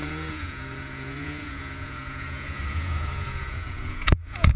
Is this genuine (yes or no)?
no